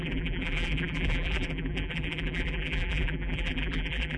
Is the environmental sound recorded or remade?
remade